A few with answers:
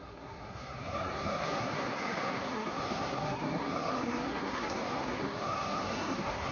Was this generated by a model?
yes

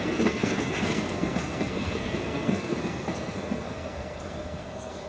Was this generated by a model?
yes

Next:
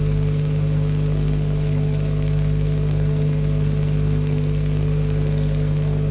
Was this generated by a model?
yes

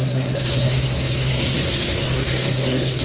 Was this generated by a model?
yes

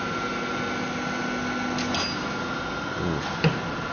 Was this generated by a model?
no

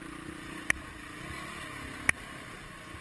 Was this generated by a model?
no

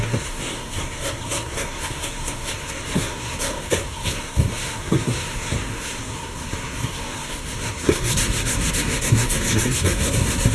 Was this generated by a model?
yes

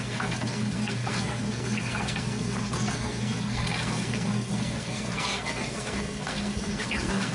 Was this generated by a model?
yes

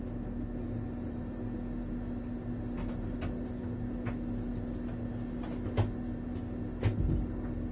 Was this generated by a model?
no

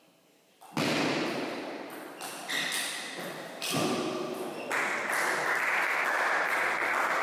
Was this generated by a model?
no